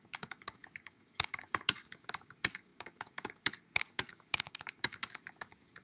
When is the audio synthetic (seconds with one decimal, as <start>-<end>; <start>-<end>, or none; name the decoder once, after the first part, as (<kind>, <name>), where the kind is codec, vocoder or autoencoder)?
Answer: 0.0-5.8 (codec, DAC)